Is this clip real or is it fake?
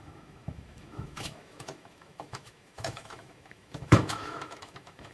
fake